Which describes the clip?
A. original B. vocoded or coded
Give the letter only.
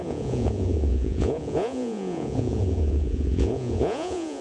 B